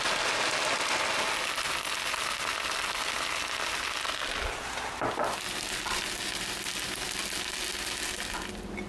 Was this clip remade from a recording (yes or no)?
no